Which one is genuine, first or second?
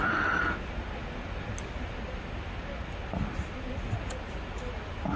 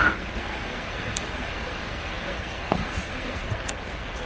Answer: first